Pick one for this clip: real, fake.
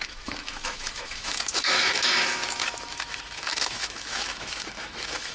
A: fake